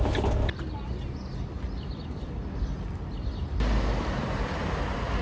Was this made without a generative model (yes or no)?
yes